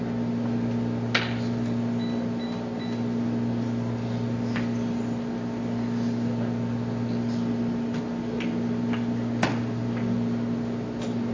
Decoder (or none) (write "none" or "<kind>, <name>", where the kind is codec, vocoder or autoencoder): none